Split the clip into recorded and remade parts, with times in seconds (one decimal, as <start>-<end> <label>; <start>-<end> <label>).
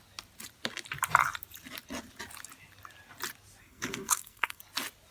0.0-3.6 recorded; 3.6-4.6 remade; 4.6-5.1 recorded